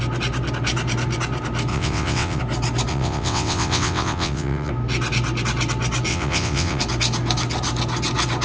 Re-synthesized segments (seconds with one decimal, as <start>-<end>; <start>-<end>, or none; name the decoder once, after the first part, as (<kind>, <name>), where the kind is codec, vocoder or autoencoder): 1.7-2.4 (vocoder, WaveNeXt); 2.9-4.7; 6.1-6.8